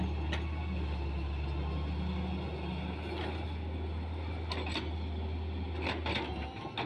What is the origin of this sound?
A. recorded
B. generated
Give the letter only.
A